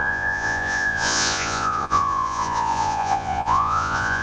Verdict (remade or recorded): remade